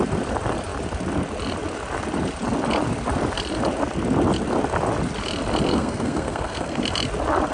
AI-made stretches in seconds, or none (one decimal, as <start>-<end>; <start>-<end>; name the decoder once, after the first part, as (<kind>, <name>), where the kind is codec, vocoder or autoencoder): 5.7-6.8 (codec, SNAC)